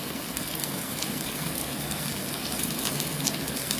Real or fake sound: fake